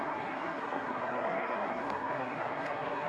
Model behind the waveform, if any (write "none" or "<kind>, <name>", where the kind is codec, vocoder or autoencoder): codec, SNAC